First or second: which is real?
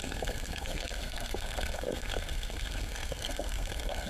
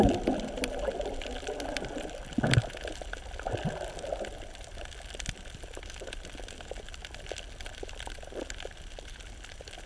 second